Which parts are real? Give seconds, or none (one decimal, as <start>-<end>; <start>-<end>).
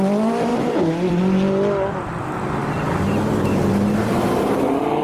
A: 0.0-0.5; 1.2-2.6; 3.6-5.0